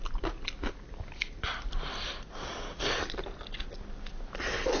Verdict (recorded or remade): recorded